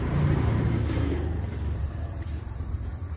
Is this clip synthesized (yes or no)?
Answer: yes